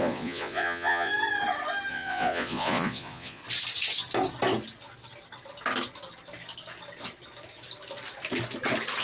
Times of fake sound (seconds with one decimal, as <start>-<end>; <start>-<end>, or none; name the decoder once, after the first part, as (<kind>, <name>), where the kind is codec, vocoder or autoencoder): 0.0-1.1 (vocoder, Vocos); 1.9-3.4